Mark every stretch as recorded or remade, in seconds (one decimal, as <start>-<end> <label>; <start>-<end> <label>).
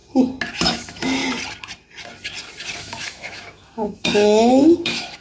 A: 0.0-0.5 recorded; 0.5-1.2 remade; 1.2-2.8 recorded; 2.8-5.2 remade